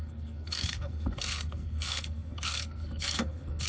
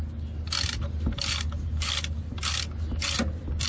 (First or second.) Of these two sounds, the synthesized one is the first